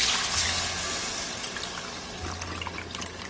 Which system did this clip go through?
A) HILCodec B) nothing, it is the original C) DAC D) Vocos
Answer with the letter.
B